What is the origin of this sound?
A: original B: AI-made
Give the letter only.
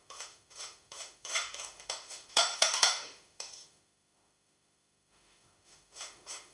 B